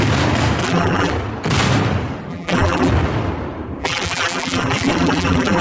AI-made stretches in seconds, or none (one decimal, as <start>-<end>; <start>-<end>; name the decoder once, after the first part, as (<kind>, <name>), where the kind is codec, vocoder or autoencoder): 0.6-1.1 (vocoder, BigVGAN v2); 2.3-2.9; 3.8-5.6